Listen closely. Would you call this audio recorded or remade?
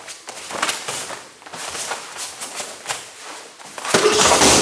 recorded